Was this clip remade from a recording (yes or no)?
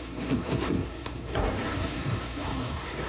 yes